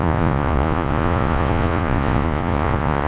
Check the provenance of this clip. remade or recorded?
remade